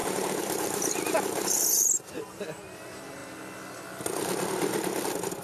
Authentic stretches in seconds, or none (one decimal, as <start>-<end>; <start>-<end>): 2.6-5.4